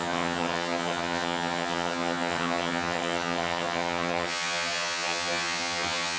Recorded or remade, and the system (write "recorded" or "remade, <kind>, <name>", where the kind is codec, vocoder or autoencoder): remade, vocoder, HiFi-GAN